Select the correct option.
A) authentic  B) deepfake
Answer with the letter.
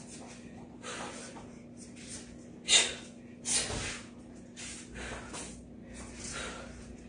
A